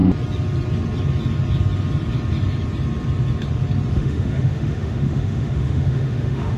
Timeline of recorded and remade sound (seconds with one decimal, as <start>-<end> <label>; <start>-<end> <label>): 0.0-3.9 recorded; 3.9-6.6 remade